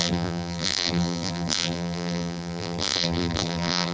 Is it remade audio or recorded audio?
remade